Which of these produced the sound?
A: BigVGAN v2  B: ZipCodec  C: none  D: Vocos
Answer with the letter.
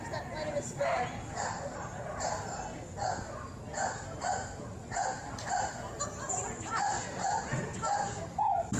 C